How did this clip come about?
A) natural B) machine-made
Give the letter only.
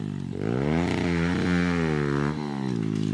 A